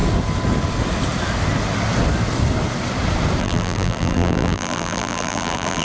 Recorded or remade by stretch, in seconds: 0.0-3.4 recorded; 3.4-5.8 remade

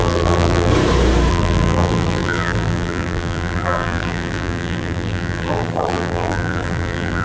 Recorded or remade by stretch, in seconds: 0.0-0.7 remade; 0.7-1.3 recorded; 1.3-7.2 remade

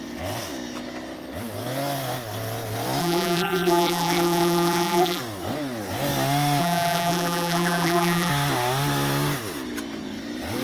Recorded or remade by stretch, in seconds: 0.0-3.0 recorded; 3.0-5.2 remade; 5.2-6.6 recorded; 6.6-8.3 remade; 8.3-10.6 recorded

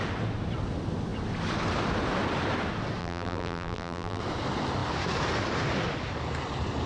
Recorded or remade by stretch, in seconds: 0.0-3.0 recorded; 3.0-4.2 remade; 4.2-6.9 recorded

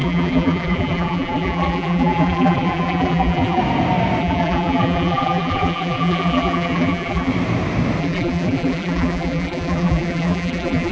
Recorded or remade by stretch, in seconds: 0.0-3.6 remade; 3.6-4.2 recorded; 4.2-7.3 remade; 7.3-8.0 recorded; 8.0-10.9 remade